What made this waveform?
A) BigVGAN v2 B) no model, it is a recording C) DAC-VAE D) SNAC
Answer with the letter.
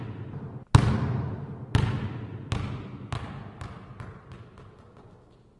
B